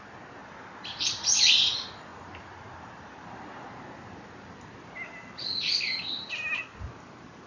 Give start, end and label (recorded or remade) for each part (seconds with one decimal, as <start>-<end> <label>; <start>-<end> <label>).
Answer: 0.0-7.5 recorded